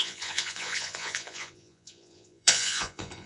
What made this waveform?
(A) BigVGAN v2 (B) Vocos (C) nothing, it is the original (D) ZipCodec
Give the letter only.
B